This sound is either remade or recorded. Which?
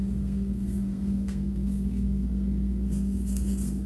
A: remade